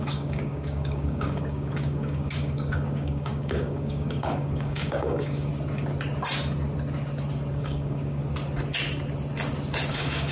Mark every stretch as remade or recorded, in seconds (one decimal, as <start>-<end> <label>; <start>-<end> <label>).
0.0-5.5 remade; 5.5-7.5 recorded; 7.5-8.2 remade; 8.2-9.9 recorded; 9.9-10.3 remade